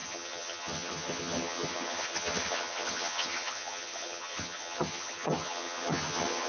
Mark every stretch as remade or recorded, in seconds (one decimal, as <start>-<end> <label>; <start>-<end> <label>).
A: 0.0-6.5 remade